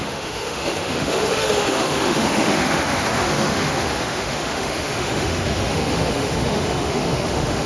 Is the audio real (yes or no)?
no